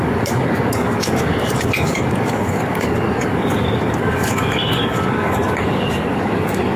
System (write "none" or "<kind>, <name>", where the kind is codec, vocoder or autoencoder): codec, DAC